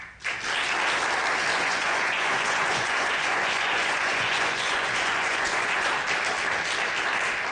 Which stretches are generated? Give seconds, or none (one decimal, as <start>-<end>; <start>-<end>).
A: 1.5-5.9